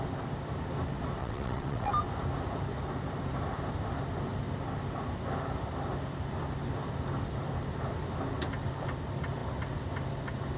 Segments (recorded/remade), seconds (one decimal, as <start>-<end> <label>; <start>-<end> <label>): 0.0-1.2 recorded; 1.2-1.9 remade; 1.9-10.6 recorded